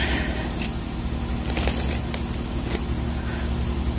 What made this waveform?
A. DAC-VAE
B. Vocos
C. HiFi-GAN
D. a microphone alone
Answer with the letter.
D